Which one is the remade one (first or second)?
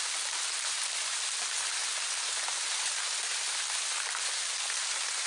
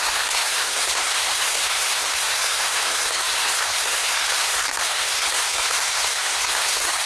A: second